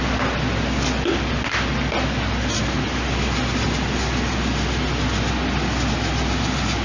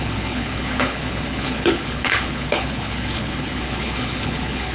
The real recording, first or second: first